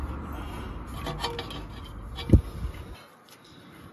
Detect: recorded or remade recorded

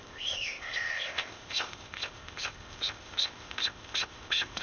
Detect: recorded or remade remade